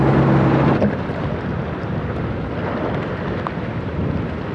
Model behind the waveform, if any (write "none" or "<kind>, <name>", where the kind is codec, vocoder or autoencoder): none